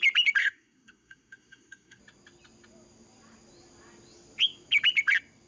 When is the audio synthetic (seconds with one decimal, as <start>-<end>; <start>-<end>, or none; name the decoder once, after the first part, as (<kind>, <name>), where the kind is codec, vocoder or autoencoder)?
0.4-2.0 (codec, SNAC)